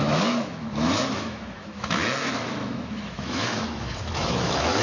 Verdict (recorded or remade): remade